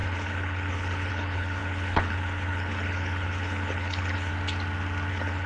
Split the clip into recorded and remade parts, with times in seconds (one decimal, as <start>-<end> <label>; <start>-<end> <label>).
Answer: 0.0-4.3 remade; 4.3-5.1 recorded; 5.1-5.5 remade